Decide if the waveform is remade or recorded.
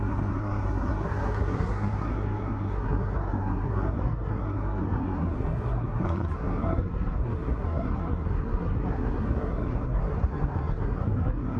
remade